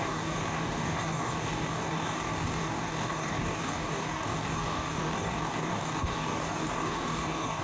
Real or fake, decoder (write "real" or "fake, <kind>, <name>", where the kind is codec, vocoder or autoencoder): fake, codec, DAC